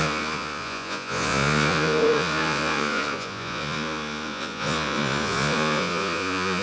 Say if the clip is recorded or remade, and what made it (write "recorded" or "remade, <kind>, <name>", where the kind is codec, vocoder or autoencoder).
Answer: remade, vocoder, Vocos